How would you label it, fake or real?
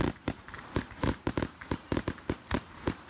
fake